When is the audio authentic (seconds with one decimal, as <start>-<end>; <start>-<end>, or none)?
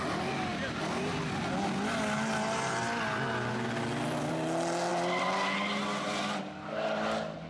0.0-7.5